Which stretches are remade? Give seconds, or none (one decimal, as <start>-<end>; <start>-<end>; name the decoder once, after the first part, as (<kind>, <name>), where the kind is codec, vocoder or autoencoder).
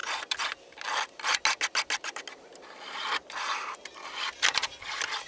none